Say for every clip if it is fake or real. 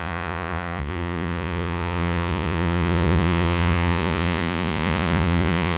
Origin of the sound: fake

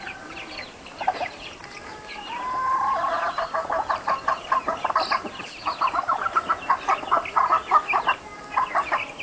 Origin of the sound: real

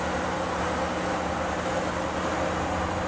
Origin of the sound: real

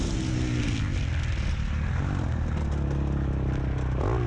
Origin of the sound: real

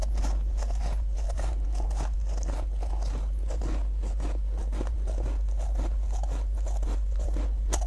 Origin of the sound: real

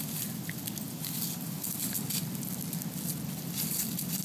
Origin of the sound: real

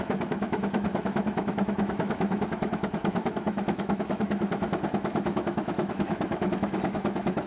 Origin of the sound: fake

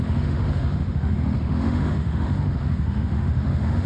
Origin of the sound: fake